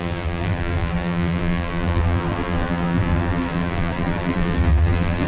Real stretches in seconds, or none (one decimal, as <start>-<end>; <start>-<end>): none